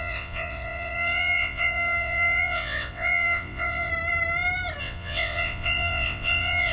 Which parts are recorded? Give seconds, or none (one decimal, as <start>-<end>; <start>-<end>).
3.9-4.8